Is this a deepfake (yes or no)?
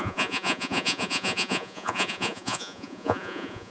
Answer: yes